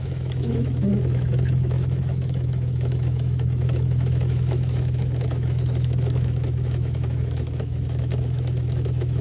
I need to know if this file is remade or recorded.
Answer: remade